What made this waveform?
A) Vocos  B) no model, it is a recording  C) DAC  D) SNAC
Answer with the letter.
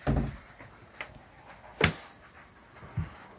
B